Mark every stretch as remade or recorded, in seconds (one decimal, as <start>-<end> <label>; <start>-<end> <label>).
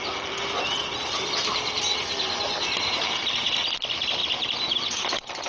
0.0-4.2 recorded; 4.2-5.5 remade